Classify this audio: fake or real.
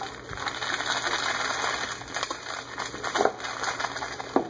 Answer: real